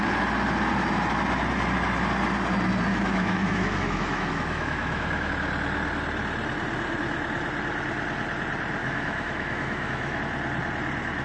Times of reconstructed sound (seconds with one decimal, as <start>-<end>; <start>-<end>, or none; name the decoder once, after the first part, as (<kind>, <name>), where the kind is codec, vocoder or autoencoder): 2.9-5.3 (autoencoder, DAC-VAE); 8.8-10.2

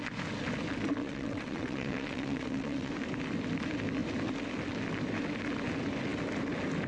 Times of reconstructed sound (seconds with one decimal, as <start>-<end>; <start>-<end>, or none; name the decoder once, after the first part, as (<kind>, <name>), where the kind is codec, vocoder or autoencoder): 1.0-2.9 (vocoder, WaveNeXt)

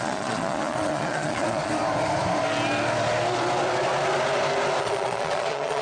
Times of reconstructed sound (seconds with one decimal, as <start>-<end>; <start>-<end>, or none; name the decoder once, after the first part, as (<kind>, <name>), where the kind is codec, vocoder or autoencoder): 0.0-1.7 (vocoder, Vocos); 4.8-5.8

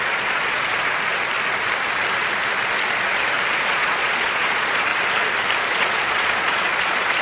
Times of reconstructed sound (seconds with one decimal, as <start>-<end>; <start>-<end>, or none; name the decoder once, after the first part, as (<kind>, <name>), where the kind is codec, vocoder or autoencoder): 0.0-0.7 (vocoder, Vocos); 3.5-4.9; 5.7-7.2

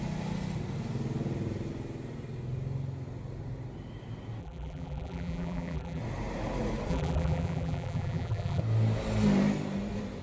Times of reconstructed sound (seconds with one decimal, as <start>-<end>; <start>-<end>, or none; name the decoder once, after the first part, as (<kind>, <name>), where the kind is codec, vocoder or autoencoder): 4.4-6.0 (vocoder, BigVGAN v2); 6.9-8.6